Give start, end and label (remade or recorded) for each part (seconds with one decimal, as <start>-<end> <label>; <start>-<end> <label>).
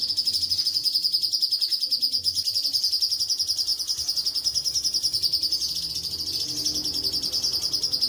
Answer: 0.0-8.1 recorded